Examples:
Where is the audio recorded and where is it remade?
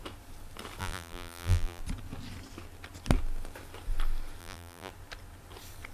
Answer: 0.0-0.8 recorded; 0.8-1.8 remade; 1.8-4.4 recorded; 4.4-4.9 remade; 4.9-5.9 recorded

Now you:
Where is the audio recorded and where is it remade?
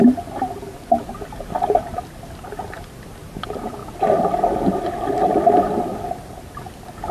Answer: 0.0-7.1 recorded